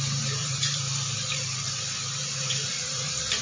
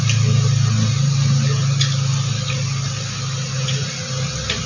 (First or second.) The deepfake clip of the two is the first